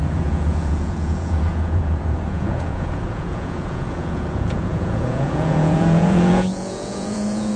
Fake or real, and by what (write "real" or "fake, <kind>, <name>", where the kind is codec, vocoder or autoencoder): fake, vocoder, Vocos